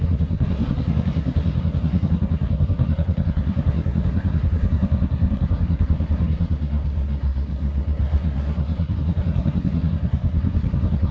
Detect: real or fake fake